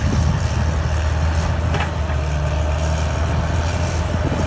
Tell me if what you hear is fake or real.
real